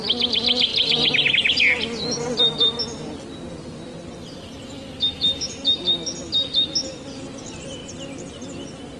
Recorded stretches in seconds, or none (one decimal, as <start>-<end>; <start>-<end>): 0.0-9.0

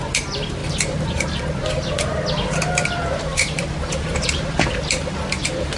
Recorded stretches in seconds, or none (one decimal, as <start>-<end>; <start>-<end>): 0.0-0.6; 1.4-3.3; 4.4-5.8

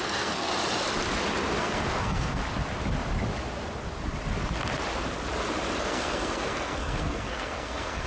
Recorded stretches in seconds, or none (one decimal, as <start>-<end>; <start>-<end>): 0.5-1.6; 2.4-5.8

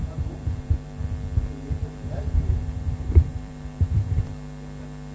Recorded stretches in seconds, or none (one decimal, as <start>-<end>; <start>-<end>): 1.0-1.8; 4.2-5.1

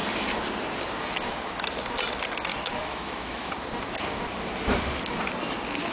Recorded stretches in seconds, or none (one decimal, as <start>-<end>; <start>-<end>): 0.0-2.5; 3.5-5.9

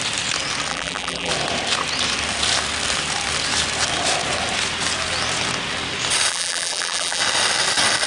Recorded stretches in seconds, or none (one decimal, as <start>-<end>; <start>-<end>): 0.0-0.7; 1.3-6.3; 7.2-8.1

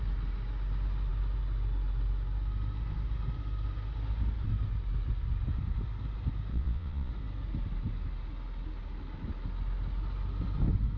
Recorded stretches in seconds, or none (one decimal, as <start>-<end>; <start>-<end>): 0.0-6.5; 7.1-11.0